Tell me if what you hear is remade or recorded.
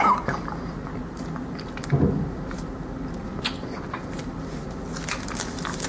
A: recorded